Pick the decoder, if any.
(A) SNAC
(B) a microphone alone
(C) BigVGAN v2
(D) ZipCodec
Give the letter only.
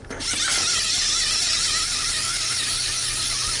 B